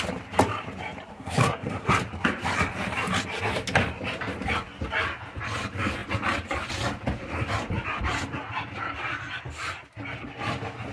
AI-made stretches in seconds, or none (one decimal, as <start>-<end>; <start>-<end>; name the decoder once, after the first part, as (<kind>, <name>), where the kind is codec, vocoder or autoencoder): 1.1-1.9 (codec, SNAC)